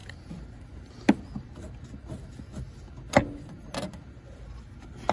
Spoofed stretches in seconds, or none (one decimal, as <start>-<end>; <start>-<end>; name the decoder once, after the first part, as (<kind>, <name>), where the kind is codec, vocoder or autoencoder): none